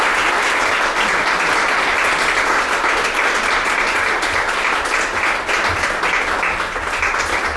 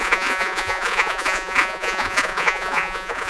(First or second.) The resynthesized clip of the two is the second